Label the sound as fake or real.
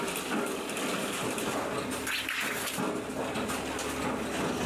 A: real